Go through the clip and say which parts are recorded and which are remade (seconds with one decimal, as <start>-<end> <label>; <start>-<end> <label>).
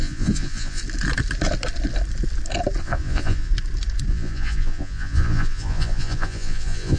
0.0-0.8 remade; 0.8-2.8 recorded; 2.8-3.5 remade; 3.5-4.1 recorded; 4.1-7.0 remade